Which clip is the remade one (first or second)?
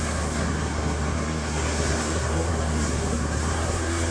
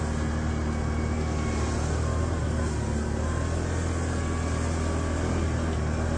first